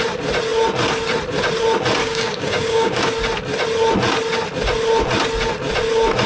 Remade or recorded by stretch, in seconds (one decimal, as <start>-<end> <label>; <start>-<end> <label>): 0.0-2.0 recorded; 2.0-3.0 remade; 3.0-6.3 recorded